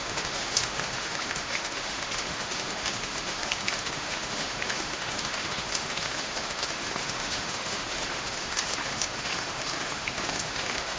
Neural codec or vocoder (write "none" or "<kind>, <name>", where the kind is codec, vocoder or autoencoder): autoencoder, DAC-VAE